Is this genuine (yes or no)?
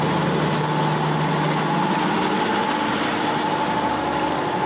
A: yes